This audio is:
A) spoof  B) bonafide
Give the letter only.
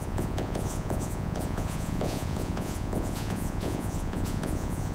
A